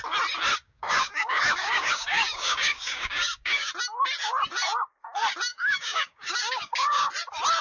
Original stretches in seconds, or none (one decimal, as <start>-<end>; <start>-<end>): 0.0-0.5; 3.7-5.5; 7.1-7.6